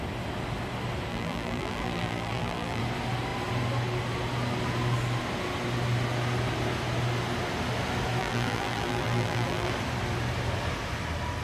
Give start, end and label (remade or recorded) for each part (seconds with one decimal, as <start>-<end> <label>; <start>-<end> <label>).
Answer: 0.0-1.1 recorded; 1.1-2.8 remade; 2.8-8.2 recorded; 8.2-9.7 remade; 9.7-11.4 recorded